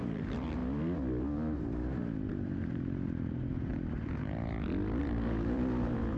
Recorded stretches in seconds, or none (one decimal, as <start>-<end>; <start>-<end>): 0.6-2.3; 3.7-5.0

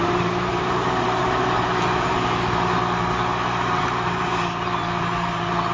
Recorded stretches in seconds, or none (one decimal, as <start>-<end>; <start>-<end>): 1.2-3.8

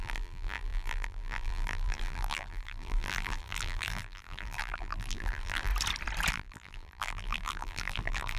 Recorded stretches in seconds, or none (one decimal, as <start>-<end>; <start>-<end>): 5.7-6.3